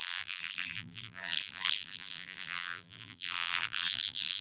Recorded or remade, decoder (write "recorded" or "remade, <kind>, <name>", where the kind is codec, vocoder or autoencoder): remade, vocoder, BigVGAN v2